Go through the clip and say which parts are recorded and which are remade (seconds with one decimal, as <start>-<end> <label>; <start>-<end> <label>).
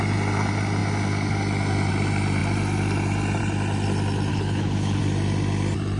0.0-4.3 recorded; 4.3-5.0 remade; 5.0-6.0 recorded